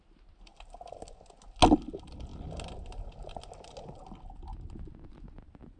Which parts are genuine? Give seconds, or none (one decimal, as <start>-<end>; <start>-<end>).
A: 0.0-5.8